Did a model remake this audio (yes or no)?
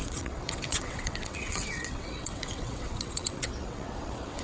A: yes